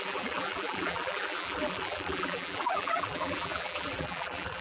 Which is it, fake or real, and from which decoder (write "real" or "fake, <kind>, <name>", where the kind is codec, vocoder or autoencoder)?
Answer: fake, vocoder, BigVGAN v2